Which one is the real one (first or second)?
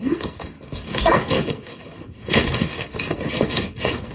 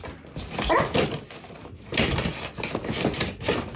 second